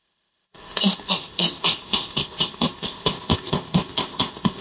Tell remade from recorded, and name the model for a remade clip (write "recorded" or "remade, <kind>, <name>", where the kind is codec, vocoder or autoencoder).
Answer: remade, codec, ZipCodec